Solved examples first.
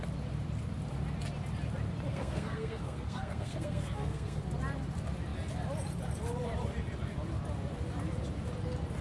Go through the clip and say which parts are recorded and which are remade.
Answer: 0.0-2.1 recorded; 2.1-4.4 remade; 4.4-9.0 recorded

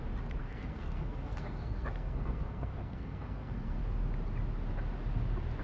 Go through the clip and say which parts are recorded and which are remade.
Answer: 0.0-0.4 recorded; 0.4-3.8 remade; 3.8-5.6 recorded

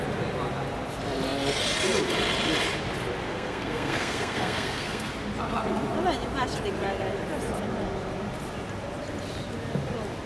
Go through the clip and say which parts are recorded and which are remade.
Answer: 0.0-3.3 recorded; 3.3-5.1 remade; 5.1-10.3 recorded

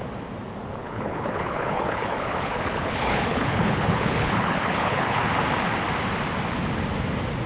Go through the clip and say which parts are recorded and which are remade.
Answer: 0.0-0.8 recorded; 0.8-5.3 remade; 5.3-7.5 recorded

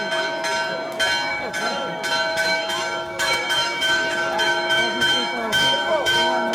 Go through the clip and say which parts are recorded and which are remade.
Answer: 0.0-1.3 recorded; 1.3-1.9 remade; 1.9-2.3 recorded; 2.3-6.5 remade

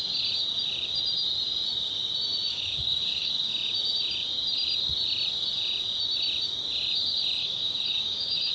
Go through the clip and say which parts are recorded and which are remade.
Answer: 0.0-2.5 recorded; 2.5-3.3 remade; 3.3-7.4 recorded; 7.4-8.5 remade

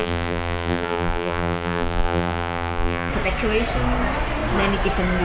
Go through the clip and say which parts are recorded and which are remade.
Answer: 0.0-3.1 remade; 3.1-5.2 recorded

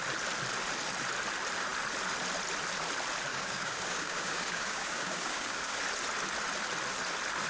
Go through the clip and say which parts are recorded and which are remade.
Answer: 0.0-3.3 recorded; 3.3-5.8 remade; 5.8-7.5 recorded